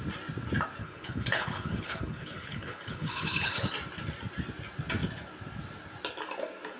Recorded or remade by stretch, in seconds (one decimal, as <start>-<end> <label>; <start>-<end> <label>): 0.0-0.8 recorded; 0.8-3.7 remade; 3.7-6.8 recorded